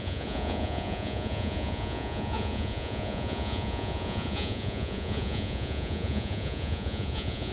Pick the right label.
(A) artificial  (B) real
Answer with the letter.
A